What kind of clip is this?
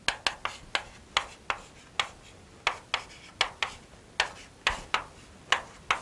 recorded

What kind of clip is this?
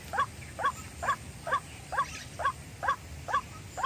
recorded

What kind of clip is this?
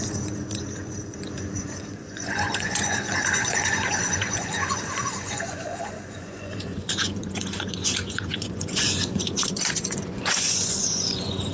remade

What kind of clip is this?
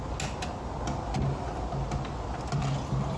recorded